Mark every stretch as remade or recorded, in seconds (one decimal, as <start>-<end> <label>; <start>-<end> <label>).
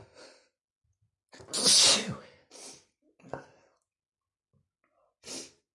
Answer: 0.0-5.7 recorded